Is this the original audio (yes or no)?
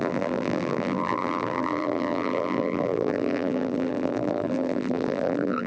no